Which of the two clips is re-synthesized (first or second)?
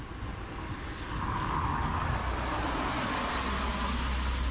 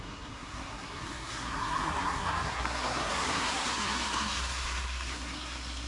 second